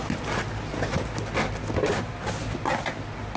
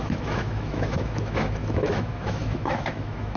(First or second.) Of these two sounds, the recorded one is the first